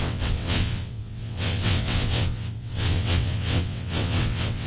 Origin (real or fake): fake